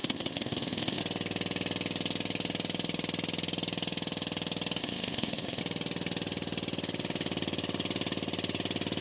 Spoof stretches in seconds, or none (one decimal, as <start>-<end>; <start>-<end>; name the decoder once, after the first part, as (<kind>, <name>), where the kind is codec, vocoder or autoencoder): 0.0-1.0 (codec, ZipCodec); 4.8-5.6